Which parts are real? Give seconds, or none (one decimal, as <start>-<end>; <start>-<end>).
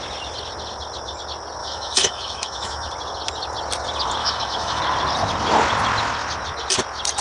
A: 0.0-1.6; 2.9-4.2; 4.8-7.2